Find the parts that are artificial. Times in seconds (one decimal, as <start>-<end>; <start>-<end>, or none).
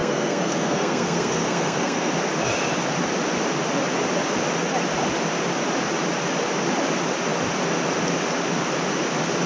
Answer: 0.0-2.1